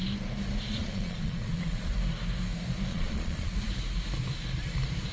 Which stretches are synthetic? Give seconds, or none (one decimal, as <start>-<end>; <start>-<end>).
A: 0.8-1.9; 2.9-3.5